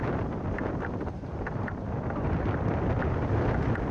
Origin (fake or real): fake